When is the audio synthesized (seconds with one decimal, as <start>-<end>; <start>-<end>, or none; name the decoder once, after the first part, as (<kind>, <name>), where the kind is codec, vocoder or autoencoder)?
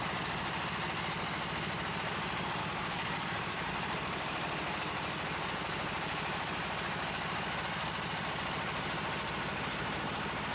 2.6-3.7 (codec, DAC)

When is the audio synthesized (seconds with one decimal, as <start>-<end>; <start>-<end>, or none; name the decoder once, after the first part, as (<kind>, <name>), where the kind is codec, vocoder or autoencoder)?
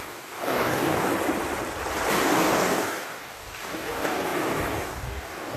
0.0-1.1 (codec, DAC); 2.1-5.6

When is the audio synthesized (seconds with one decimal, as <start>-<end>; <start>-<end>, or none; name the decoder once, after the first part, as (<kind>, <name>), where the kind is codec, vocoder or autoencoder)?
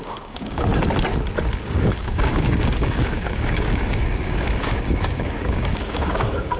0.0-0.7 (codec, DAC); 1.6-6.6